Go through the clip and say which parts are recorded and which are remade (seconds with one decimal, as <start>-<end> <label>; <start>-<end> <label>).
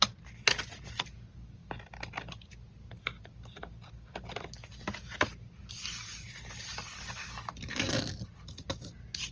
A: 0.0-9.3 recorded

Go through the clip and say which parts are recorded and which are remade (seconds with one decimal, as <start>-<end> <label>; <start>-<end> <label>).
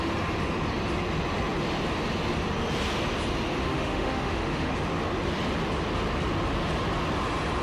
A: 0.0-3.6 recorded; 3.6-4.7 remade; 4.7-7.6 recorded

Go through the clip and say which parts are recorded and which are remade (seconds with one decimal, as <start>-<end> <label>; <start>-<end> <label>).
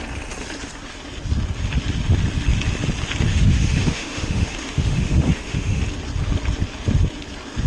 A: 0.0-3.3 recorded; 3.3-5.8 remade; 5.8-7.7 recorded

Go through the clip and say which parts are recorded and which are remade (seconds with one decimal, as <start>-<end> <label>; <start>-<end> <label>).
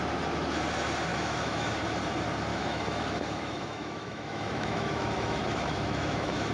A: 0.0-1.1 recorded; 1.1-1.7 remade; 1.7-2.5 recorded; 2.5-6.5 remade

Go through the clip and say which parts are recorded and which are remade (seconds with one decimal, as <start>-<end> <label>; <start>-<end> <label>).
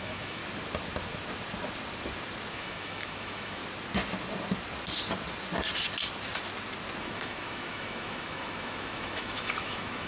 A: 0.0-0.4 remade; 0.4-2.5 recorded; 2.5-3.6 remade; 3.6-7.0 recorded; 7.0-10.1 remade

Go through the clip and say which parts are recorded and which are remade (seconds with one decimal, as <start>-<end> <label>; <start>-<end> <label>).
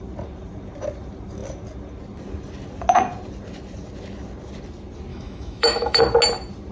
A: 0.0-5.1 recorded; 5.1-6.0 remade; 6.0-6.7 recorded